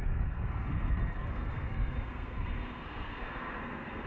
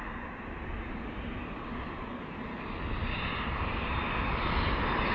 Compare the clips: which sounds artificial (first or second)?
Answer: first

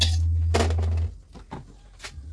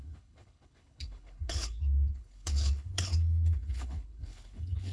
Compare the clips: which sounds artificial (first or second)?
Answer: second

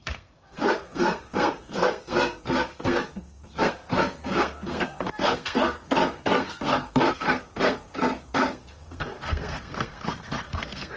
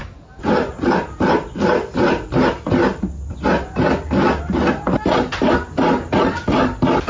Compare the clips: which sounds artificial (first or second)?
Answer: first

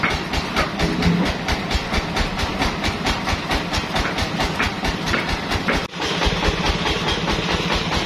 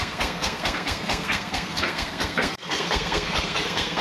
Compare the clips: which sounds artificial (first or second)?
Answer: second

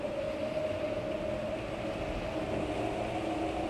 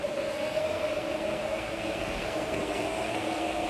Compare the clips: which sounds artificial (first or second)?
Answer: second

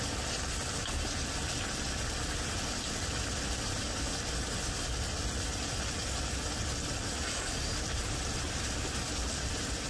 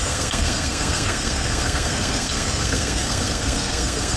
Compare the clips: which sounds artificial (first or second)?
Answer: second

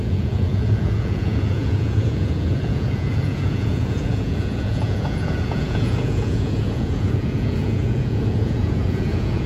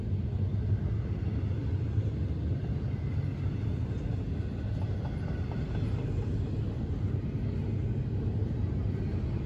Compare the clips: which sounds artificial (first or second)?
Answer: first